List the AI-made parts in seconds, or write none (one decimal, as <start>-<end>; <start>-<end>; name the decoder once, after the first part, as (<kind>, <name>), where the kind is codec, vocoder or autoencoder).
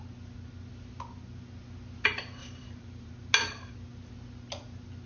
2.4-3.1 (vocoder, BigVGAN v2)